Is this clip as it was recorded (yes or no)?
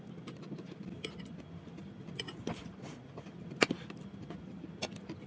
yes